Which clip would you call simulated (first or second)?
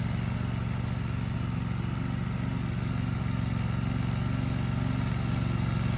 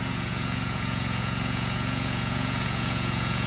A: second